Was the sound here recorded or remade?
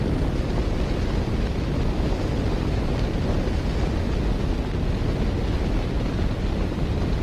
recorded